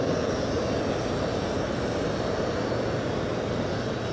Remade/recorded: recorded